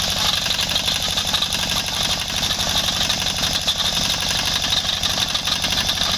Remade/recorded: remade